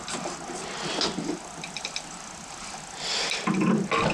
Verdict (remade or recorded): recorded